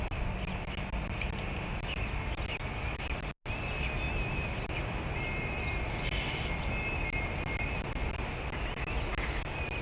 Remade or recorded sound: recorded